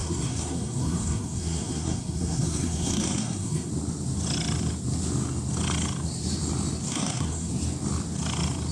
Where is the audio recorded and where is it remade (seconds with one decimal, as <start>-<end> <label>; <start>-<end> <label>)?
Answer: 0.0-3.7 remade; 3.7-6.9 recorded; 6.9-7.5 remade; 7.5-8.7 recorded